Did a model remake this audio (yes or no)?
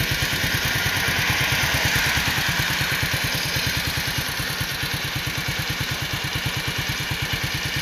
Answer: no